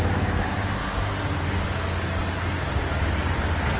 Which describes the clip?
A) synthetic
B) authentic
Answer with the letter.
B